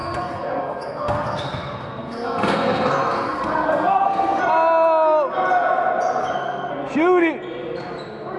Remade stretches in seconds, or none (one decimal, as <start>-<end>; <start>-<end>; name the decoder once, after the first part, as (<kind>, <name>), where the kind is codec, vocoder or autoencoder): 0.0-4.4 (codec, SNAC); 6.2-6.7